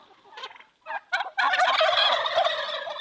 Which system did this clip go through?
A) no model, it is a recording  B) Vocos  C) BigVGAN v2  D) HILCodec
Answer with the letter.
A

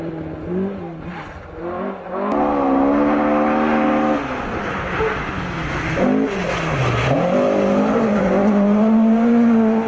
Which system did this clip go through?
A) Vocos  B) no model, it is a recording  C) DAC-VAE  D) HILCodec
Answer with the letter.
B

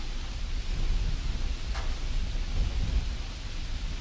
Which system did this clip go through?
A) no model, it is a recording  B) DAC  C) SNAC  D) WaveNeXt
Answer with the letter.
A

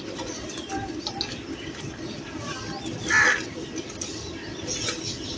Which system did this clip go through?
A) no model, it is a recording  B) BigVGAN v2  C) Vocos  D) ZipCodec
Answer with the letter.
A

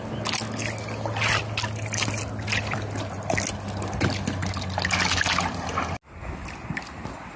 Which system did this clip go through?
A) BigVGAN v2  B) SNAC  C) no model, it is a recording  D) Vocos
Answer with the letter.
C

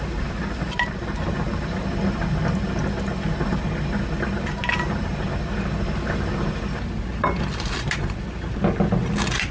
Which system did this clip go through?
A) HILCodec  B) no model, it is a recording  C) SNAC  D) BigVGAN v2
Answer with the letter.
B